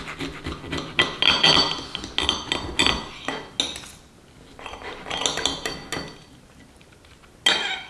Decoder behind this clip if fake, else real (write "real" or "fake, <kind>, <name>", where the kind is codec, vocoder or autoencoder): real